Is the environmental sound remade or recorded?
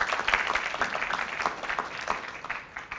recorded